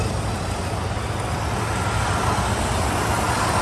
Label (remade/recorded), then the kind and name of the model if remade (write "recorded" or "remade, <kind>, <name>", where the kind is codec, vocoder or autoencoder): recorded